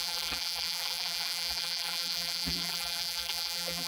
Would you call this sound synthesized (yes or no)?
yes